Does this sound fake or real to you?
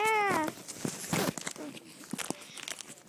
real